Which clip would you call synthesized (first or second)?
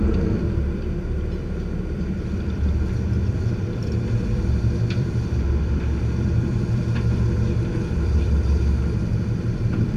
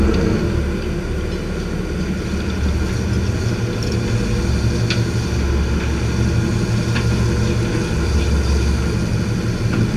first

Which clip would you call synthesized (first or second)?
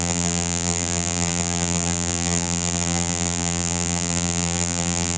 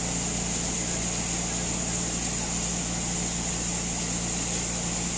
first